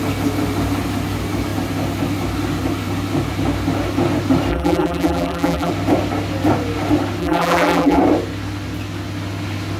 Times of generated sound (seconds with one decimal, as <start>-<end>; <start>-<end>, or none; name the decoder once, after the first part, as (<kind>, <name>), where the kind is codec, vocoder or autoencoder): 4.5-5.7 (vocoder, BigVGAN v2); 7.2-8.0